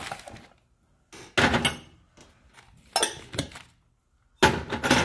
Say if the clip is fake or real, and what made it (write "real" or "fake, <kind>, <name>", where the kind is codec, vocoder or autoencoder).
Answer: real